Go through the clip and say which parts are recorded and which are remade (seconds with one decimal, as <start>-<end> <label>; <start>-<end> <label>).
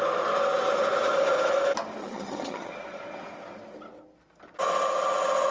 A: 0.0-2.0 recorded; 2.0-2.7 remade; 2.7-5.5 recorded